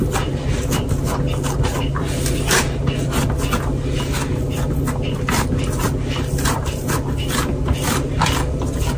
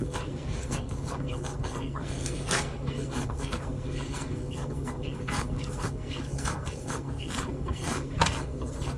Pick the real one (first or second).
first